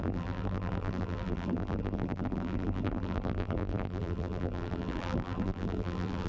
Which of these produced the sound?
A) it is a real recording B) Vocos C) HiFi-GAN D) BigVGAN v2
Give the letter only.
D